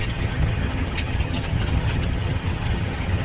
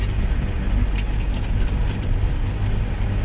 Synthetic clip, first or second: first